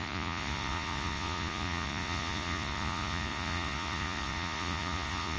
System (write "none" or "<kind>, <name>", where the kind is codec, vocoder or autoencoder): vocoder, Vocos